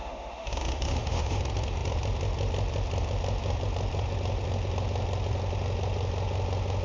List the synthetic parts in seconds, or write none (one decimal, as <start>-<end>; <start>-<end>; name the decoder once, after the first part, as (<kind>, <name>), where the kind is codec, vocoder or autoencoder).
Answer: 0.0-1.4 (autoencoder, DAC-VAE)

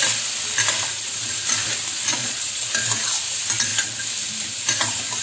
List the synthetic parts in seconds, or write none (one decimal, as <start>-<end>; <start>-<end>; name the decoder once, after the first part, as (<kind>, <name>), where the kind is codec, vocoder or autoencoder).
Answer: 2.2-2.7 (vocoder, Vocos)

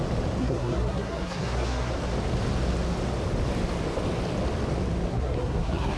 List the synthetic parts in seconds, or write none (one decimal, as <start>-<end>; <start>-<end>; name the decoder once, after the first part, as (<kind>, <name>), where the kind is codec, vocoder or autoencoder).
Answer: 0.4-1.9 (codec, SNAC); 5.1-6.0